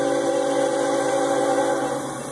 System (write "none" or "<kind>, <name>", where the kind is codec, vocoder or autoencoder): none